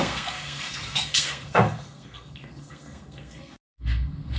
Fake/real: fake